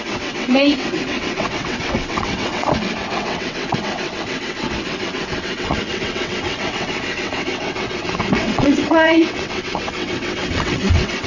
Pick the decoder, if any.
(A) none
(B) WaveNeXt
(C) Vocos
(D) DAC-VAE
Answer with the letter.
B